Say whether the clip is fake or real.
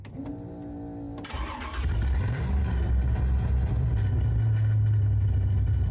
real